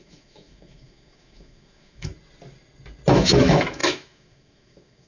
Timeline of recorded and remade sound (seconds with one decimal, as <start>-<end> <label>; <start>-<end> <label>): 0.0-2.1 remade; 2.1-3.1 recorded; 3.1-5.1 remade